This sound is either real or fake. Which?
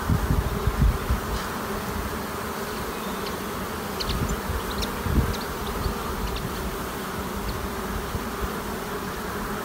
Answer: real